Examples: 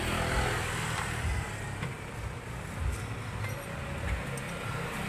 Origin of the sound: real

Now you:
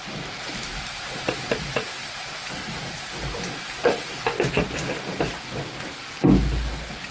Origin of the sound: real